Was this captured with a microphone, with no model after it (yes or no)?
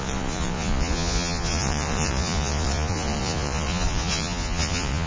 no